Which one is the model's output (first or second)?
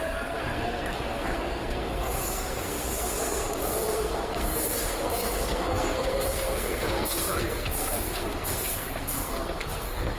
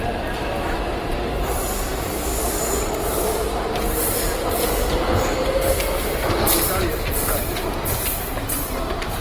first